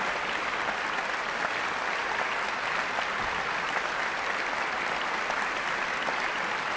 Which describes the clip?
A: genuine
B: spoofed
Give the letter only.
A